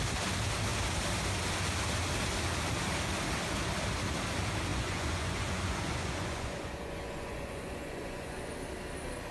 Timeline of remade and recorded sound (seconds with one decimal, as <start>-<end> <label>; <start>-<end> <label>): 0.0-4.7 recorded; 4.7-8.5 remade; 8.5-9.3 recorded